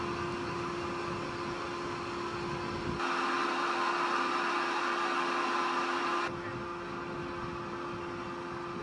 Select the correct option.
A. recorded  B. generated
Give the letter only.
A